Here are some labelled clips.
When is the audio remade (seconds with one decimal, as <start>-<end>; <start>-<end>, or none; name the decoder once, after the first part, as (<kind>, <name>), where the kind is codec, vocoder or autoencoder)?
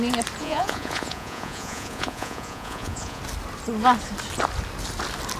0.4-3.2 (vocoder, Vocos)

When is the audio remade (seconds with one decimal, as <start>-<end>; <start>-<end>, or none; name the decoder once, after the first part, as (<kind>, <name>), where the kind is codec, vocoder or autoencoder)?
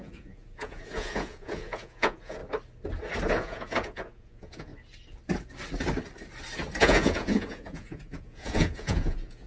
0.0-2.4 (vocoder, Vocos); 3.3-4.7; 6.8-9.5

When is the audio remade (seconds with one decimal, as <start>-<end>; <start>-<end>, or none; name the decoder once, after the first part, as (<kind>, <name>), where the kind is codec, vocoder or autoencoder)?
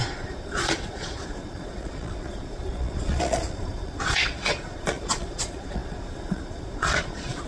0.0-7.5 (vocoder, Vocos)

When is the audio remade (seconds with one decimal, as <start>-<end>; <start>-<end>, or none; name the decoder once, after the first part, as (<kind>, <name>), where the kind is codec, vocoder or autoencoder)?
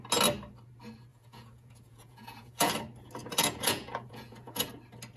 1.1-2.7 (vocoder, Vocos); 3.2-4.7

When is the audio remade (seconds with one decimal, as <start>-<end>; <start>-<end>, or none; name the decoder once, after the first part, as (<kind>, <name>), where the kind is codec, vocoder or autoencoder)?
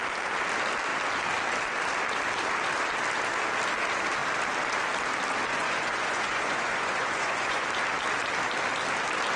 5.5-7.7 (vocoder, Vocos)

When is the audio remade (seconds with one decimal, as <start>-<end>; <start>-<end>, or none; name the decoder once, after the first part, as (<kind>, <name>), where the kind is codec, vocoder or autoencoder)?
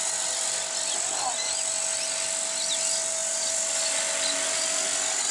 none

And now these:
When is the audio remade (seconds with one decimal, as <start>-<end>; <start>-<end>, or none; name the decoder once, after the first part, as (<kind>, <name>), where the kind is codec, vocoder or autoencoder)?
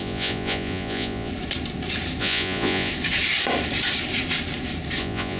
0.0-1.3 (vocoder, Vocos); 2.2-2.9; 5.0-5.4